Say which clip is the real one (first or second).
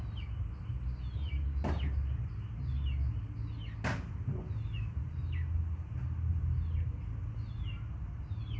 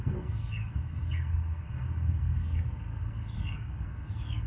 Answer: first